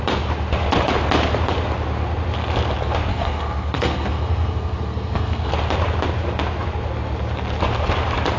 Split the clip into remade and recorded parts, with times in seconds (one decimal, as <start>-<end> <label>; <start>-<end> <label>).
0.0-3.1 recorded; 3.1-5.5 remade; 5.5-8.4 recorded